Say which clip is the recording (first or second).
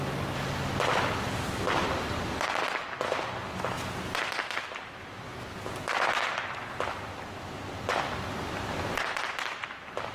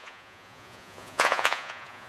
first